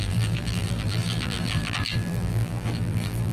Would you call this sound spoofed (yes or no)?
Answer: yes